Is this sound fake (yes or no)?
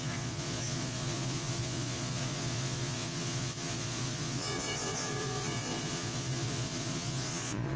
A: yes